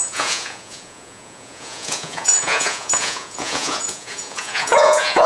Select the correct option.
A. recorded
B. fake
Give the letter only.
B